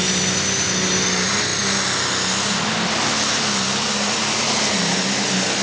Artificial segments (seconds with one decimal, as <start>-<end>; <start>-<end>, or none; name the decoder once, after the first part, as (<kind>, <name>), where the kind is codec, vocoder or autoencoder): none